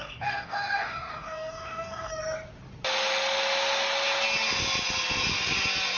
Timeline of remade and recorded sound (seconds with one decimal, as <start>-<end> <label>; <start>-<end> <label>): 0.0-2.1 remade; 2.1-6.0 recorded